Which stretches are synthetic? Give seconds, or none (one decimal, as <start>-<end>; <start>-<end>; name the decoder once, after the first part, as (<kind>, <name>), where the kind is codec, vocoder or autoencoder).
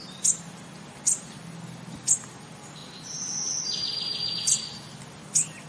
none